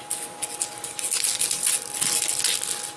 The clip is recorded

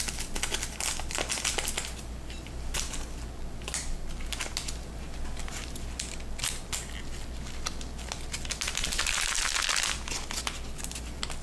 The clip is recorded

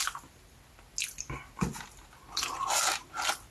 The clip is recorded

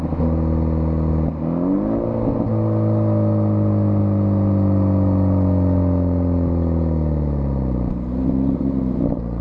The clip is recorded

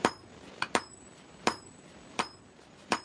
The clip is recorded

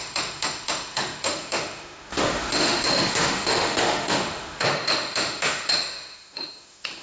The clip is remade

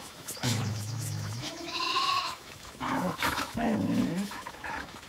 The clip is remade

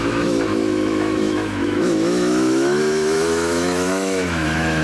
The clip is remade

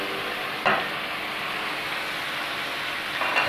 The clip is recorded